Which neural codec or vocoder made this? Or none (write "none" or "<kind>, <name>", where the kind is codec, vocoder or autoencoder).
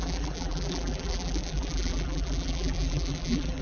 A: vocoder, BigVGAN v2